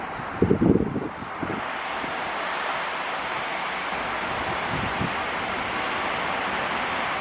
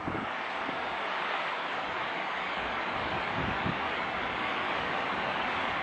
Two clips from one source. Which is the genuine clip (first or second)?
first